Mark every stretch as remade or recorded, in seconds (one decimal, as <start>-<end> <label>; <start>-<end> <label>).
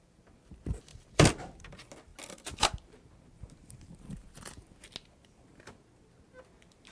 0.0-6.9 recorded